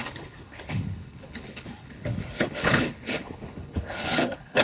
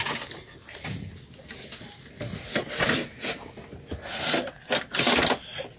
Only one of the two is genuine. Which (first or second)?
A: second